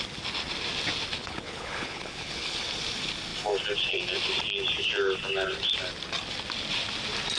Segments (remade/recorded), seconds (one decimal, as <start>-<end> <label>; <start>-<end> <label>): 0.0-1.2 recorded; 1.2-2.6 remade; 2.6-7.4 recorded